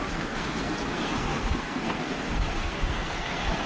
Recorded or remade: remade